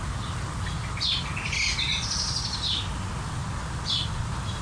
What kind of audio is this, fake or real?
real